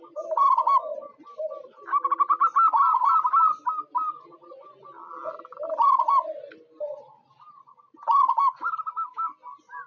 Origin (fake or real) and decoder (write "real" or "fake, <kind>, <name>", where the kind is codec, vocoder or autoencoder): real